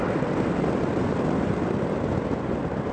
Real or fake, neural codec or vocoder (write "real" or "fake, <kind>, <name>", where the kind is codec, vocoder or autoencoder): real